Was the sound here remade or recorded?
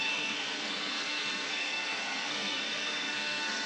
remade